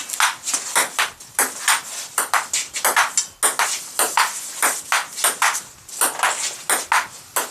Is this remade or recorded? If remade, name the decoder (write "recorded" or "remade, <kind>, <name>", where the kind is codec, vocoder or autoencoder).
recorded